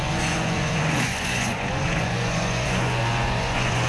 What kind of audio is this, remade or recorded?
remade